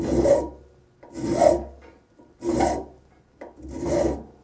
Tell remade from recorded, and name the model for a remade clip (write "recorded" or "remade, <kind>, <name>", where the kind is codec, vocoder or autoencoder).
recorded